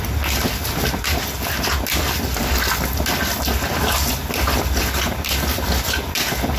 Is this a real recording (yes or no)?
yes